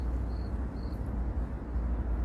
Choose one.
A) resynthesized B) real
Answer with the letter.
B